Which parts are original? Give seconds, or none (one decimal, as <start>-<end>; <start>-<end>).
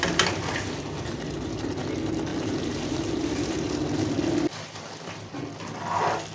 0.0-6.3